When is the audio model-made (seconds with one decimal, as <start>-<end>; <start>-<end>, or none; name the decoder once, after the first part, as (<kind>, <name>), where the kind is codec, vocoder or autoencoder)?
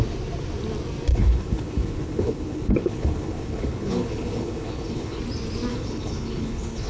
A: 1.1-5.2 (codec, HILCodec); 5.7-6.9